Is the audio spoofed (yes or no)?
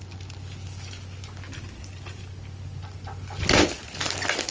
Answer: no